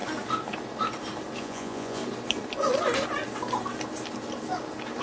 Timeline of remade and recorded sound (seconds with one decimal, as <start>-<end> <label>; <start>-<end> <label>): 0.0-1.4 recorded; 1.4-2.0 remade; 2.0-5.0 recorded